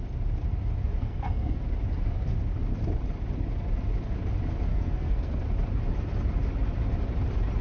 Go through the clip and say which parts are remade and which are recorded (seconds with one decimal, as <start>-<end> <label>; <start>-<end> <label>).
0.0-1.0 recorded; 1.0-1.6 remade; 1.6-4.7 recorded; 4.7-5.3 remade; 5.3-7.6 recorded